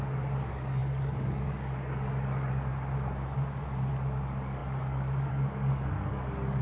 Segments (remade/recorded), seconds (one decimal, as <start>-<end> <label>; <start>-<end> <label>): 0.0-2.7 remade; 2.7-3.9 recorded; 3.9-6.6 remade